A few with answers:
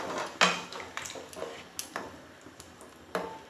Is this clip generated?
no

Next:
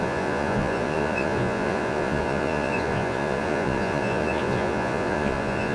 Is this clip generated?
yes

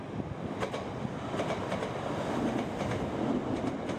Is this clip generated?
no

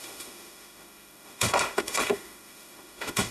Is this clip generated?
yes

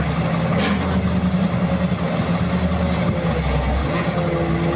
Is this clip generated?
no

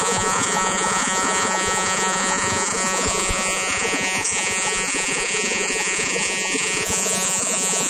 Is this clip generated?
yes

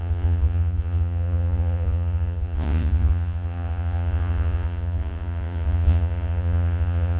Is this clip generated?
yes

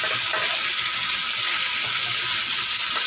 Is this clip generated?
no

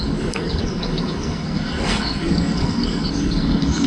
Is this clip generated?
yes